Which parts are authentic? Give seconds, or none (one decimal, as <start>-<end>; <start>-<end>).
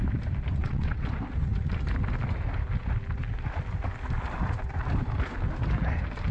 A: 0.0-0.6; 1.1-6.3